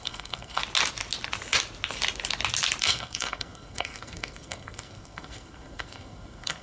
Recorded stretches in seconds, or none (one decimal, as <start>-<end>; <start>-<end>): 0.6-2.8